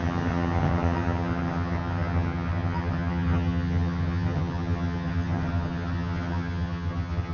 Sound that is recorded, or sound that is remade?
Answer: remade